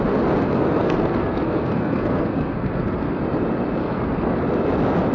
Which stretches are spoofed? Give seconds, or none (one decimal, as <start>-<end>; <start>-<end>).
0.4-3.2; 3.8-4.4